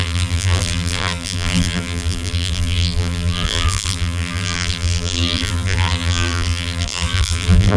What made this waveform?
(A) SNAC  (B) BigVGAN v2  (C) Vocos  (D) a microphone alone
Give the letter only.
B